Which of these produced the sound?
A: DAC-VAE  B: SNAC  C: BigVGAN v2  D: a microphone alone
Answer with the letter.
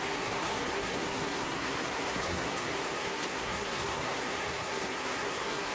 B